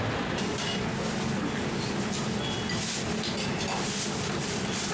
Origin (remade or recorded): recorded